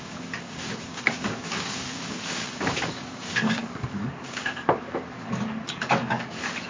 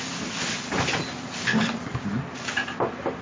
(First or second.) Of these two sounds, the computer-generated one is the first